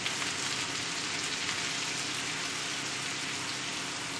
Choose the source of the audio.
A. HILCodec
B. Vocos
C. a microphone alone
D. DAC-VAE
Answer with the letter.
C